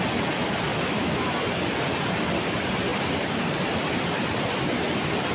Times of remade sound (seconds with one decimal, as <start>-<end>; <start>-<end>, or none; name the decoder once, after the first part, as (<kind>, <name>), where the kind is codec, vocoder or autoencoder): 0.7-1.3 (autoencoder, DAC-VAE)

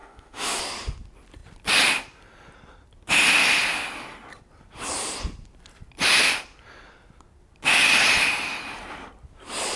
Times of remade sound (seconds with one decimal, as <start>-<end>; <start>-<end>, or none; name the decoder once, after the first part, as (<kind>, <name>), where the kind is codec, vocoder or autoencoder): 0.0-0.6 (autoencoder, DAC-VAE)

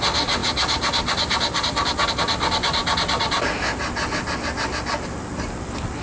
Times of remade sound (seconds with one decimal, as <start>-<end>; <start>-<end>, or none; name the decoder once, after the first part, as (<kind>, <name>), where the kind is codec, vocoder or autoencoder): none

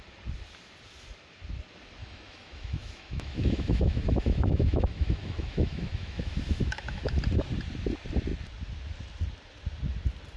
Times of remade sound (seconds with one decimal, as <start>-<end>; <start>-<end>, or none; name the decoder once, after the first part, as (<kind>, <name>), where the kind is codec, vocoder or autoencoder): 2.0-7.2 (autoencoder, DAC-VAE)

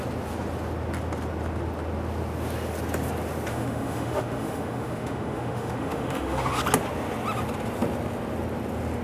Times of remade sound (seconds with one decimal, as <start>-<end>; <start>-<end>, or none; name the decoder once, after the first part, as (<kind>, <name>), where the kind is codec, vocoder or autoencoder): 3.5-6.6 (autoencoder, DAC-VAE)

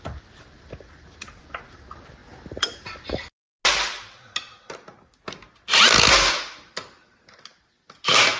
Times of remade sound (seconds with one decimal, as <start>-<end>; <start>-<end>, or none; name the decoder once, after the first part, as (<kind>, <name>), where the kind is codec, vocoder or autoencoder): none

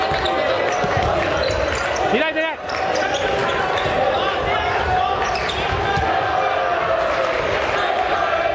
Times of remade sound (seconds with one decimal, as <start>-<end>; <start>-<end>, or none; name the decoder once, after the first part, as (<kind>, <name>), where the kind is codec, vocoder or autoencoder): none

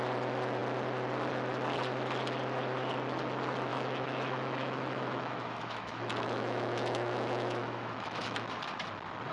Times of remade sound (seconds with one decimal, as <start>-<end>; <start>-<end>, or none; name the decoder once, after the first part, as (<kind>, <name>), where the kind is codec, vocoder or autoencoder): 3.7-8.5 (autoencoder, DAC-VAE)